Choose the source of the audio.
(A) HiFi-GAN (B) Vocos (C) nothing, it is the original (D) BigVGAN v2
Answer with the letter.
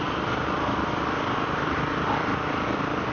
D